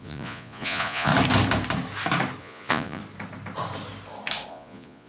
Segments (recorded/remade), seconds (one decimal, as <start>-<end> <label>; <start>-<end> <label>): 0.0-1.1 remade; 1.1-2.4 recorded; 2.4-3.0 remade; 3.0-4.5 recorded; 4.5-5.1 remade